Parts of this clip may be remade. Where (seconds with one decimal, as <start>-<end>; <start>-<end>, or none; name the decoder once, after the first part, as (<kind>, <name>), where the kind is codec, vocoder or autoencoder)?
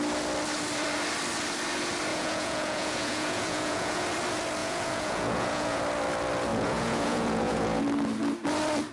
2.1-4.0 (vocoder, Vocos); 4.6-5.8; 6.5-7.8